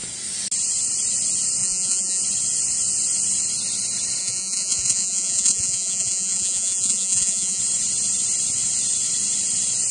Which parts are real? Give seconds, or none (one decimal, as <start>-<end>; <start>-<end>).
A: 0.0-1.6; 2.2-4.2; 7.6-9.9